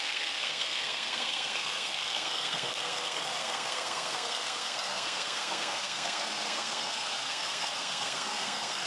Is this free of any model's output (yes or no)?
no